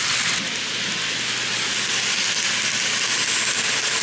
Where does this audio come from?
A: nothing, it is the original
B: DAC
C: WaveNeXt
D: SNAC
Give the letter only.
A